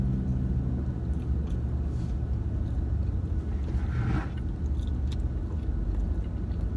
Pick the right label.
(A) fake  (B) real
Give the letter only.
B